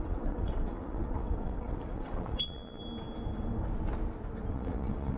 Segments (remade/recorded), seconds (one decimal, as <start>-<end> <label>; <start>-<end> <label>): 0.0-2.8 remade; 2.8-4.5 recorded; 4.5-5.2 remade

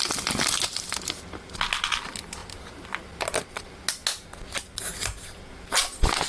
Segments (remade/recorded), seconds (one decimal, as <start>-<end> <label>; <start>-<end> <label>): 0.0-6.3 recorded